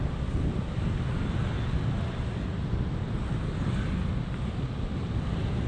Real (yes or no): yes